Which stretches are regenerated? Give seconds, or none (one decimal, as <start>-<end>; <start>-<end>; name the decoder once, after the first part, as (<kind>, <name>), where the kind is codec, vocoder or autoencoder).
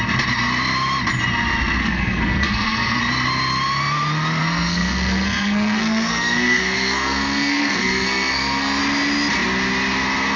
1.8-3.0 (codec, SNAC); 4.4-8.8